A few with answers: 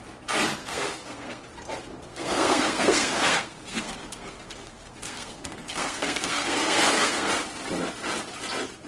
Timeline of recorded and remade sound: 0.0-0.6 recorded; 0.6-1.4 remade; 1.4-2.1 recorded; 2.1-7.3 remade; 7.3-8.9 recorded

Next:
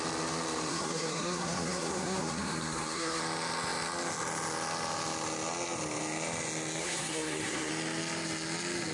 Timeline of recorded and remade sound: 0.0-0.7 recorded; 0.7-3.2 remade; 3.2-6.8 recorded; 6.8-7.7 remade; 7.7-8.9 recorded

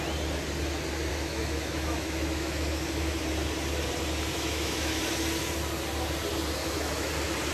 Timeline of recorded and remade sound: 0.0-1.1 recorded; 1.1-3.2 remade; 3.2-4.3 recorded; 4.3-5.0 remade; 5.0-6.6 recorded; 6.6-7.1 remade; 7.1-7.5 recorded

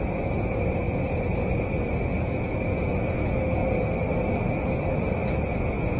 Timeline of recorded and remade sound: 0.0-3.6 remade; 3.6-4.8 recorded; 4.8-6.0 remade

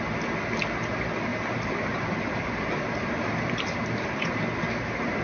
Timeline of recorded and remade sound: 0.0-1.3 recorded; 1.3-4.4 remade; 4.4-5.2 recorded

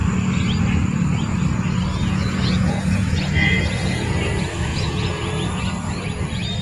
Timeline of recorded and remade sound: 0.0-2.0 recorded; 2.0-3.6 remade; 3.6-4.7 recorded; 4.7-5.3 remade; 5.3-6.6 recorded

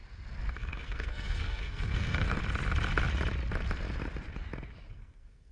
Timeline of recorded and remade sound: 0.0-0.5 recorded; 0.5-2.4 remade; 2.4-4.9 recorded; 4.9-5.5 remade